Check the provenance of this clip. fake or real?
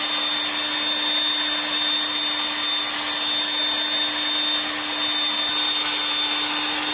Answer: real